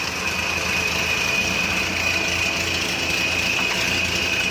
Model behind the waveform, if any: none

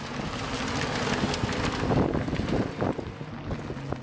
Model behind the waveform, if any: none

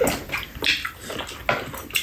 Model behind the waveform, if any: none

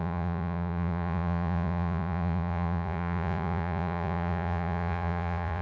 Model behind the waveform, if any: vocoder, Vocos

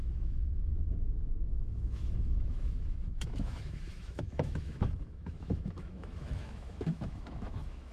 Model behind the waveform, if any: autoencoder, DAC-VAE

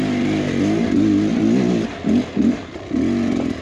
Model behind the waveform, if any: none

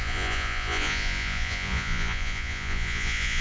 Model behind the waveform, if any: vocoder, Vocos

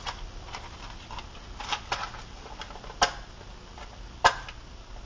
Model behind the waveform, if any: none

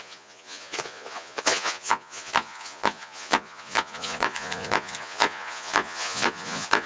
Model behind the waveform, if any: vocoder, Vocos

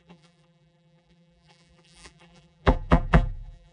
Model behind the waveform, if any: vocoder, BigVGAN v2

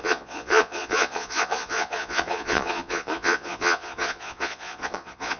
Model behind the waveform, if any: vocoder, Vocos